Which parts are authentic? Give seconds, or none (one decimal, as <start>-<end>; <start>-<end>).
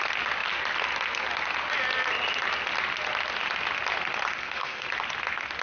0.0-4.4; 4.9-5.6